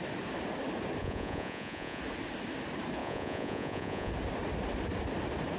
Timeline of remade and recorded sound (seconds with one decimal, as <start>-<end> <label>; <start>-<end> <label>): 0.0-1.0 recorded; 1.0-2.0 remade; 2.0-3.0 recorded; 3.0-4.1 remade; 4.1-5.6 recorded

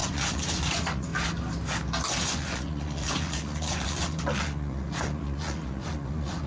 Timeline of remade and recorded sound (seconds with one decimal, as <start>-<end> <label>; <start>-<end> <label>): 0.0-1.1 remade; 1.1-2.2 recorded; 2.2-6.5 remade